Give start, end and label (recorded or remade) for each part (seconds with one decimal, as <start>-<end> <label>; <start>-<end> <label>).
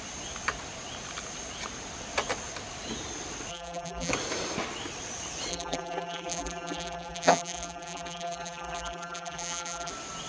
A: 0.0-3.5 recorded; 3.5-4.1 remade; 4.1-5.5 recorded; 5.5-9.9 remade; 9.9-10.3 recorded